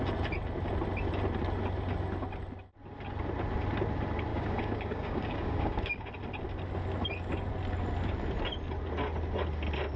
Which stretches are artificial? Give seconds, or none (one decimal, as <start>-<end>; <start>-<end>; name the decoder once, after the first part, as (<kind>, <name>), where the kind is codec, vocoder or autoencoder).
4.3-6.1 (codec, DAC)